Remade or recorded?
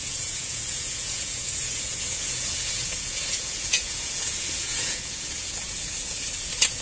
remade